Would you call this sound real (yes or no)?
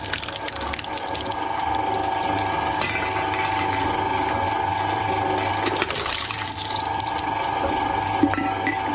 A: yes